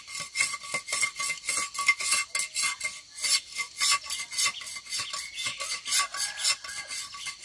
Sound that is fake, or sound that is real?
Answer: real